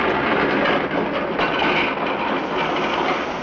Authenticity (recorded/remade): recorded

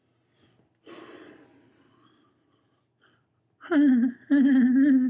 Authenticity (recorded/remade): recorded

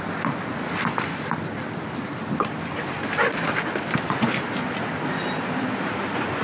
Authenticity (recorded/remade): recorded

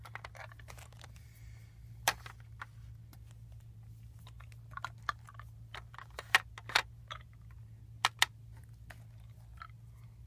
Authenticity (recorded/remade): recorded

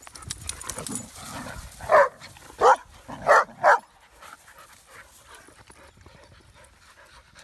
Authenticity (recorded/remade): recorded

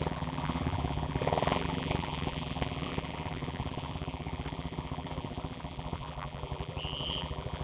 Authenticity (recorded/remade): remade